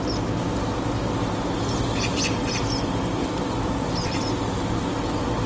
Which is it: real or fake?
real